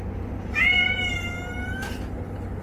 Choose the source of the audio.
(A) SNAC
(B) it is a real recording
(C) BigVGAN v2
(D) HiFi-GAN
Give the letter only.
B